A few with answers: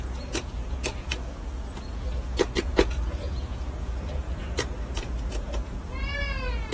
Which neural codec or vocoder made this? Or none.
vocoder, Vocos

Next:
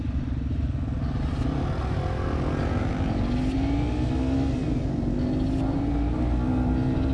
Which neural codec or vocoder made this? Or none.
none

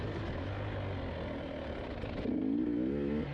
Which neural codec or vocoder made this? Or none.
none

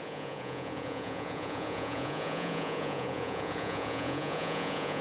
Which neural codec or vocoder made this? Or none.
vocoder, Vocos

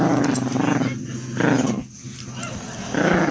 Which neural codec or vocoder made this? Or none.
none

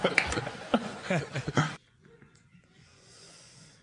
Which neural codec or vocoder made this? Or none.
vocoder, Vocos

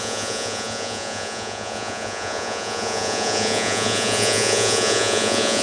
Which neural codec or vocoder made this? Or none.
vocoder, Vocos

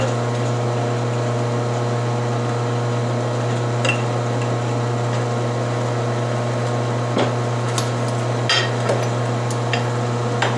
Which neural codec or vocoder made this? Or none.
none